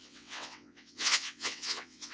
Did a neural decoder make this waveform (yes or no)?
yes